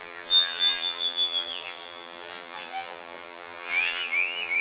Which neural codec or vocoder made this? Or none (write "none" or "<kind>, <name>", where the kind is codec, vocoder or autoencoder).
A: vocoder, BigVGAN v2